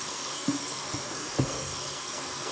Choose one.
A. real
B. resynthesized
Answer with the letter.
B